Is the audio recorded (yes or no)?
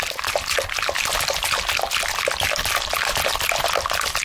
yes